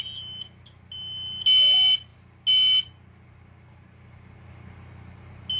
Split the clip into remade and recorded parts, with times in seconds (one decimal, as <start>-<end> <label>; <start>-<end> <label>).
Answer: 0.0-5.6 recorded